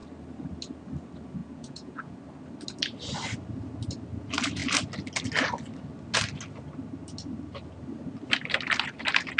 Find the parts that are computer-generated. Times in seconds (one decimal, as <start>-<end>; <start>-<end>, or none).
1.4-2.2